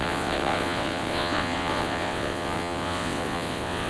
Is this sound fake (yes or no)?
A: yes